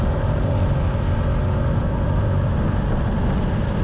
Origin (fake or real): real